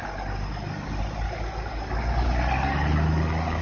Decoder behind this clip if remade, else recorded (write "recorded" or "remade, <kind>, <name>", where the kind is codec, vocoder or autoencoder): recorded